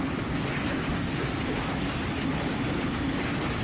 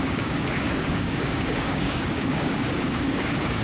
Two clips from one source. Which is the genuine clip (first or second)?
first